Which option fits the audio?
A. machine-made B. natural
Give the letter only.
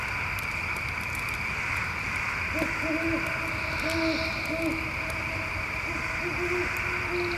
B